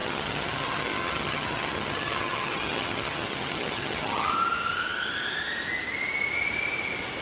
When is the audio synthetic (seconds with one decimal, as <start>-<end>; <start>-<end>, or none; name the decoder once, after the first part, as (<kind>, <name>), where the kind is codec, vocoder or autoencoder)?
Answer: 0.0-4.3 (vocoder, HiFi-GAN)